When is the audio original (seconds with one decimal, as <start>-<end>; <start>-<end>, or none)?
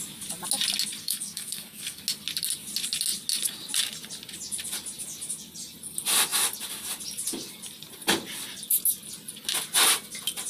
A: 0.0-1.0; 2.0-10.5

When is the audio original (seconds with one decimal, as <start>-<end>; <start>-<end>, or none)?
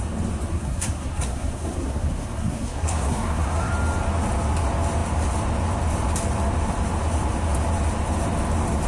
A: 0.0-0.5; 3.7-8.9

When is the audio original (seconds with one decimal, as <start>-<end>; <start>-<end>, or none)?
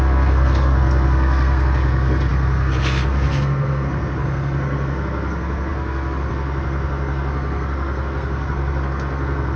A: none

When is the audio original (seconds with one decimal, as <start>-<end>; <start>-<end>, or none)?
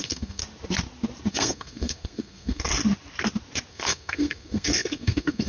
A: 0.4-1.3; 2.7-3.7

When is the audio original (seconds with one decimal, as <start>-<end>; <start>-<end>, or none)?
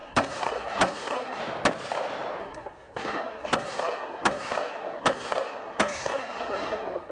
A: 1.4-2.4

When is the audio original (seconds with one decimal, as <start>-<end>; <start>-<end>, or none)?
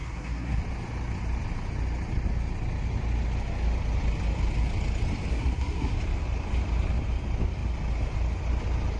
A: 0.6-5.3; 5.9-9.0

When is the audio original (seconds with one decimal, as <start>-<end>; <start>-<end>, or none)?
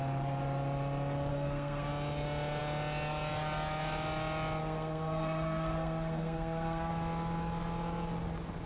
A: 0.0-1.3; 1.9-4.6; 6.9-8.7